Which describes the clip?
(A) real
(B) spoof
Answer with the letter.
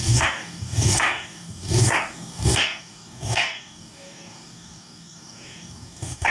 B